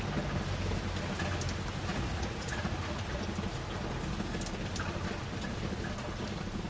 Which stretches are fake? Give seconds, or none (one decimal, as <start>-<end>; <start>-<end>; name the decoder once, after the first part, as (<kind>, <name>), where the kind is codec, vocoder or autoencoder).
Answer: 1.9-3.2 (vocoder, Vocos)